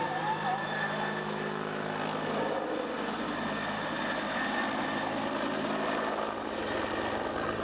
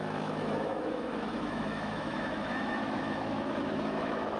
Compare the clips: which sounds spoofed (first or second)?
second